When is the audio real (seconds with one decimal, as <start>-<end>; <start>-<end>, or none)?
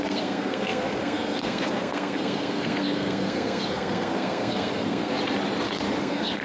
5.1-6.0